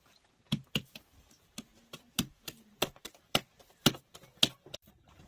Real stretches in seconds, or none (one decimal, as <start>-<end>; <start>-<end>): 0.0-0.4; 1.0-1.7